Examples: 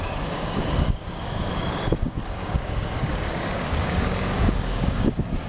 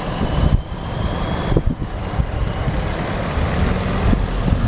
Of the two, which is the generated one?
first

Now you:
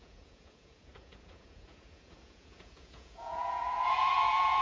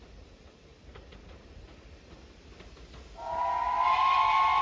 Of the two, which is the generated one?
first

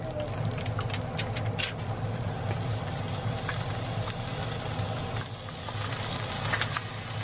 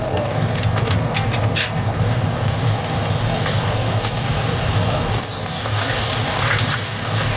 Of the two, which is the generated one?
second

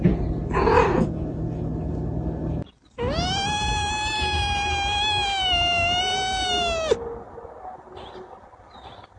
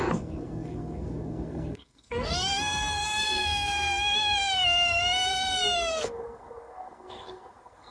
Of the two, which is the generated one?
second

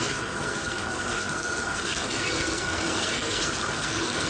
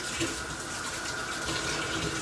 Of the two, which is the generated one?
first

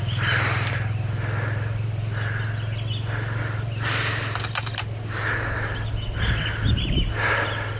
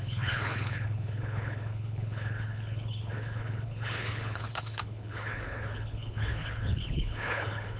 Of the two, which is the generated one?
second